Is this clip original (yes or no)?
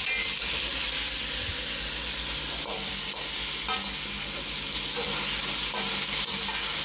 yes